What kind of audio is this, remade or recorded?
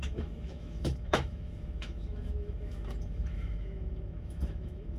remade